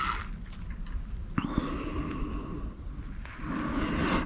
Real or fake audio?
real